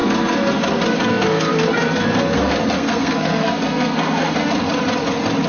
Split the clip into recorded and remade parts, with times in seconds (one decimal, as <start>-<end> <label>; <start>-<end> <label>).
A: 0.0-0.6 remade; 0.6-1.1 recorded; 1.1-4.4 remade; 4.4-5.5 recorded